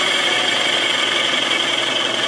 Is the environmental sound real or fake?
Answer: fake